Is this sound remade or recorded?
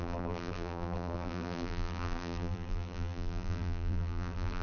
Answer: remade